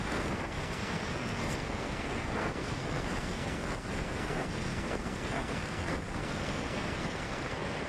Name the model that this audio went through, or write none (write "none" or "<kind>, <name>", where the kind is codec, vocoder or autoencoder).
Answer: codec, SNAC